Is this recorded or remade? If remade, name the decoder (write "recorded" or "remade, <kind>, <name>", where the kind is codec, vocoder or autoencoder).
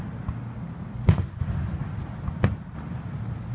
recorded